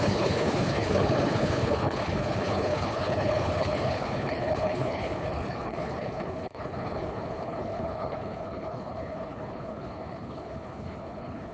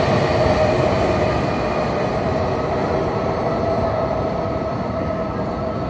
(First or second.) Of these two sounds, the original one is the second